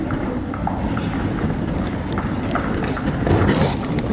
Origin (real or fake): real